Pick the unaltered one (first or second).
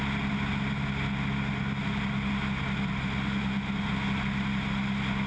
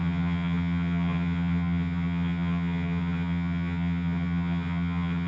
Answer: first